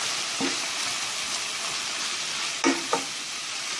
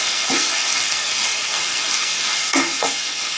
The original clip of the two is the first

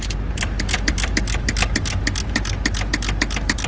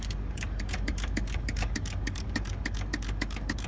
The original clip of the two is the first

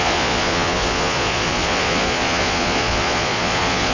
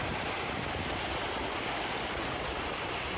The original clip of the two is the second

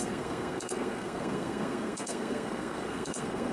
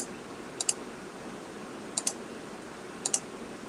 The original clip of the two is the second